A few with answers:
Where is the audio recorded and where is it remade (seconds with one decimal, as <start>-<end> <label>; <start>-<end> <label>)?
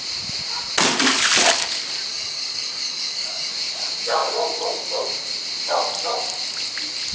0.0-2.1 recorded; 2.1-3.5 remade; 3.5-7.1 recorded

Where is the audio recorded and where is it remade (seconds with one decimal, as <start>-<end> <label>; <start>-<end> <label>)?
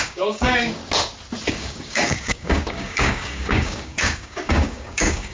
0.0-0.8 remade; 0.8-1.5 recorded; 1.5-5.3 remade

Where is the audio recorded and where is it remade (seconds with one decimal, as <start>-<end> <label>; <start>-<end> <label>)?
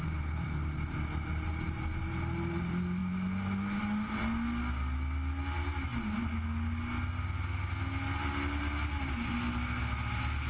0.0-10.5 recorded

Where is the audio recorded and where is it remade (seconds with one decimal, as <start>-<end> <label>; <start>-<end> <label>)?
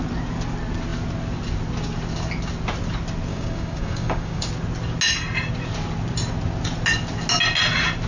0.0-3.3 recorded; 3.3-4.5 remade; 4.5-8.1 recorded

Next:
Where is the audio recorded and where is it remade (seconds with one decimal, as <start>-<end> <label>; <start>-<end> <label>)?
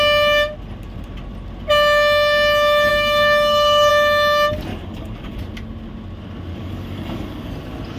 0.0-2.9 recorded; 2.9-3.9 remade; 3.9-4.7 recorded; 4.7-5.4 remade; 5.4-6.5 recorded; 6.5-7.5 remade; 7.5-8.0 recorded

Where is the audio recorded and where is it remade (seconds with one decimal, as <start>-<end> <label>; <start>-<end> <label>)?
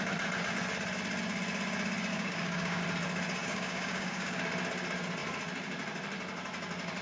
0.0-2.1 recorded; 2.1-2.8 remade; 2.8-3.4 recorded; 3.4-4.4 remade; 4.4-7.0 recorded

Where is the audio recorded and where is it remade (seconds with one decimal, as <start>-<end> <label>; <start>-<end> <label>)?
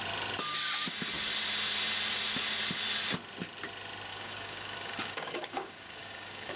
0.0-4.1 recorded; 4.1-6.6 remade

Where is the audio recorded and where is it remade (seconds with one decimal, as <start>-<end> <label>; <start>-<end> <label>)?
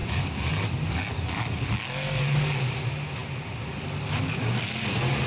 0.0-0.5 remade; 0.5-5.3 recorded